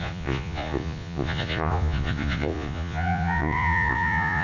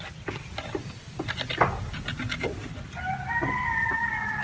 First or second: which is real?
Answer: second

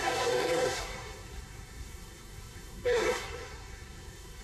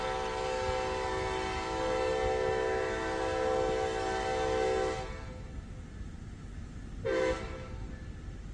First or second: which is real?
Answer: second